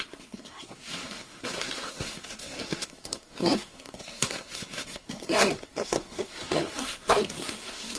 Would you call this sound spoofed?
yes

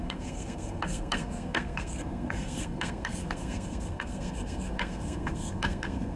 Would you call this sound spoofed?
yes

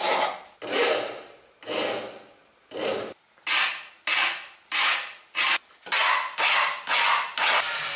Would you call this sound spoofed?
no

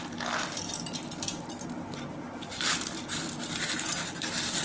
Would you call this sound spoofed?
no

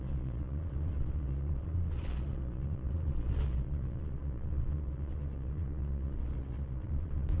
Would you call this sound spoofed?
yes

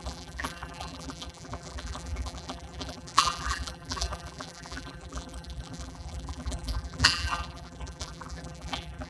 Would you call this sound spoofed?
yes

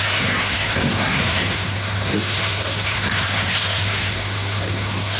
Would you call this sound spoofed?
yes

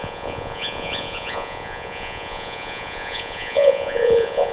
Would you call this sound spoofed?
yes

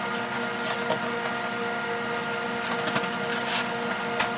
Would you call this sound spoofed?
no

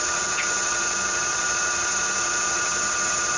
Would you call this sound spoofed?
yes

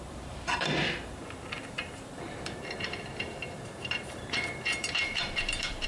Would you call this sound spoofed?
yes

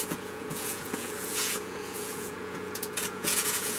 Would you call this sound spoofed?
yes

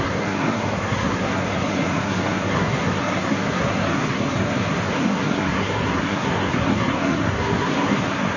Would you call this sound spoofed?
yes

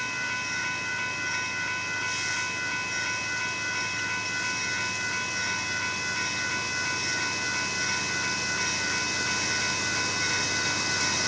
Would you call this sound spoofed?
no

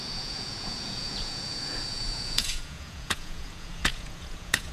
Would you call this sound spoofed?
yes